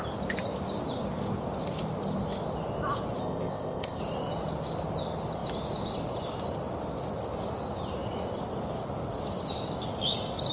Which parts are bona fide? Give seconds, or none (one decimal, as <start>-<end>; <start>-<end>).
0.0-3.2; 4.0-10.5